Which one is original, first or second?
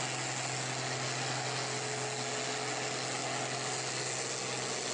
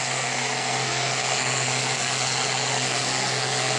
first